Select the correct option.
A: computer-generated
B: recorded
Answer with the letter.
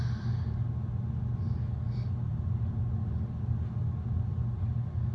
B